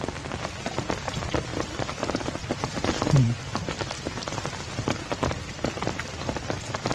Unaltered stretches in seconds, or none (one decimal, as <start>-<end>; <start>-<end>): 0.0-6.9